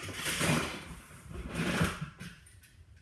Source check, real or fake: fake